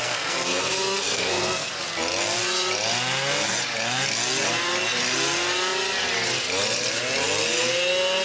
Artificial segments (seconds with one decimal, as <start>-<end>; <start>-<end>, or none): 0.0-1.7